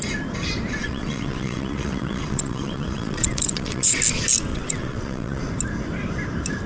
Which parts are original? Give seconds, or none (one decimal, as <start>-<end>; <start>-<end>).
0.0-0.8; 4.0-4.5; 5.4-6.7